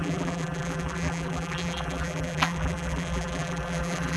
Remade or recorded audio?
remade